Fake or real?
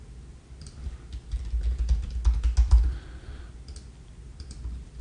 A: real